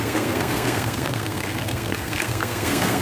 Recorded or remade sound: remade